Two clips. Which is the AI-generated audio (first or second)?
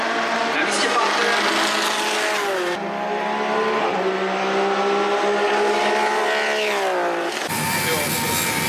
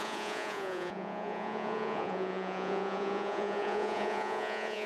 second